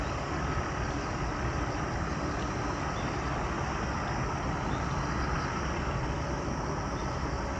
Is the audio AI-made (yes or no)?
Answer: no